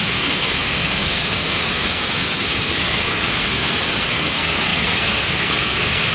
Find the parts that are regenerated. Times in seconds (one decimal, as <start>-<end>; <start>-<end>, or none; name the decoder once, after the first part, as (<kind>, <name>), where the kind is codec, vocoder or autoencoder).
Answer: 0.0-6.1 (codec, SNAC)